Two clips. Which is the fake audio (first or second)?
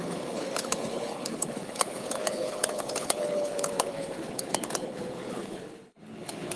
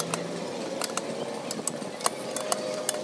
first